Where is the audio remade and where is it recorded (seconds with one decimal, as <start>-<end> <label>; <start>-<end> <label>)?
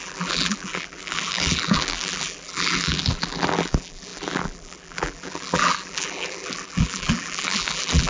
0.0-8.1 remade